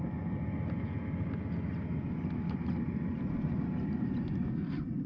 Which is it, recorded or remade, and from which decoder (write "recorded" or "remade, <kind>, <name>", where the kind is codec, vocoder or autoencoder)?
recorded